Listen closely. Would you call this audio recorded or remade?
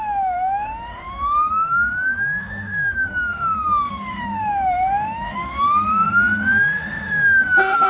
remade